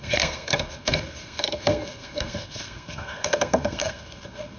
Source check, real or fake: fake